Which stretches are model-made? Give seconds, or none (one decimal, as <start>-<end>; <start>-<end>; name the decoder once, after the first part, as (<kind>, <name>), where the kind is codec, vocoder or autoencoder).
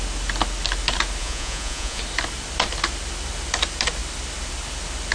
1.2-2.0 (vocoder, Vocos)